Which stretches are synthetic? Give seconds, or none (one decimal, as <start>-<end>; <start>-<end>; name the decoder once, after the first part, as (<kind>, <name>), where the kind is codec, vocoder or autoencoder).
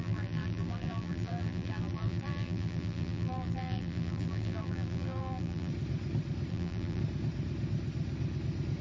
0.0-5.7 (vocoder, BigVGAN v2); 6.5-7.0